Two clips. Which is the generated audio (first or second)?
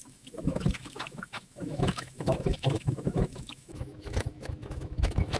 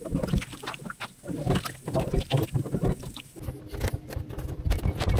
first